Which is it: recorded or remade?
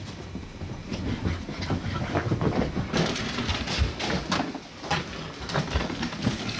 recorded